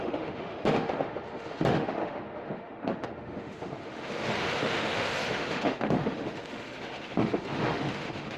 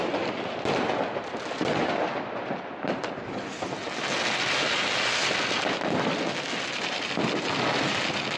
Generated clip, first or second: first